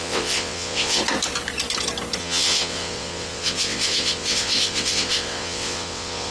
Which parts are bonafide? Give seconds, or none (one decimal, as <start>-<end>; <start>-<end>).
1.0-2.2